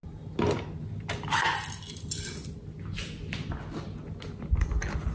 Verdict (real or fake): real